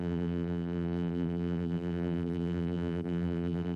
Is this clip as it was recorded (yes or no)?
no